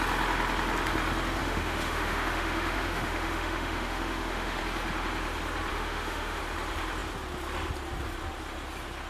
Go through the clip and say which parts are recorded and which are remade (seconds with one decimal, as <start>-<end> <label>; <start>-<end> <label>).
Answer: 0.0-1.4 recorded; 1.4-4.6 remade; 4.6-5.7 recorded; 5.7-6.4 remade; 6.4-9.1 recorded